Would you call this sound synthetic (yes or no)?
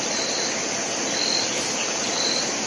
no